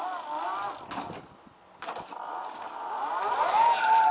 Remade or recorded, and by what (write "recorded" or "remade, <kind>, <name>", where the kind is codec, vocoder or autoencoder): recorded